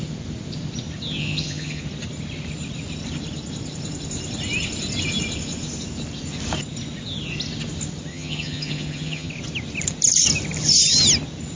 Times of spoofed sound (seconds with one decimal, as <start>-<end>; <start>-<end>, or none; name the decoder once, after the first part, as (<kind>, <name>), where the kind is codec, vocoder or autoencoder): 1.2-1.8 (vocoder, HiFi-GAN); 8.1-9.3